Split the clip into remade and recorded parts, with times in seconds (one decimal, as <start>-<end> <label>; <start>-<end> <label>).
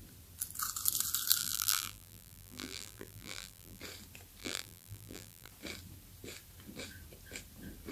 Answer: 0.0-1.4 recorded; 1.4-3.8 remade; 3.8-4.4 recorded; 4.4-5.5 remade; 5.5-7.9 recorded